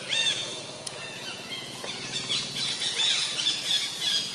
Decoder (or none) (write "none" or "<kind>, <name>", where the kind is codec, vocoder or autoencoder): vocoder, Vocos